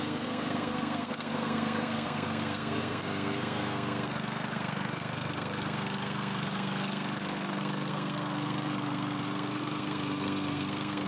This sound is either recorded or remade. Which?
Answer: remade